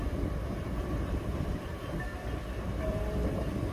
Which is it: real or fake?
fake